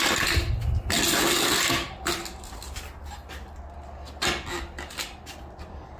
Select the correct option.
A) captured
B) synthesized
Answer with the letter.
A